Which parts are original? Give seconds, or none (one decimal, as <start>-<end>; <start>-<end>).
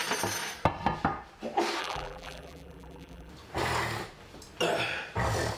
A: 0.0-1.8; 3.3-5.6